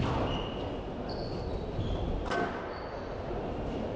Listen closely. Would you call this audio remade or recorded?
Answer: recorded